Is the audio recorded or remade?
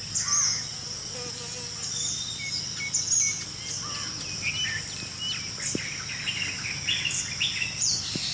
recorded